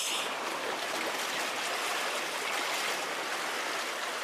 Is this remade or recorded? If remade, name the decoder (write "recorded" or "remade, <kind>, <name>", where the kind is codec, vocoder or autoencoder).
recorded